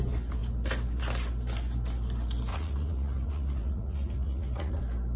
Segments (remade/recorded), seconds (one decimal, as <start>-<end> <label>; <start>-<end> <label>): 0.0-2.5 recorded; 2.5-4.8 remade; 4.8-5.2 recorded